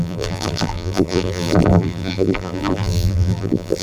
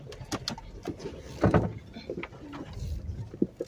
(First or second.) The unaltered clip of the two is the second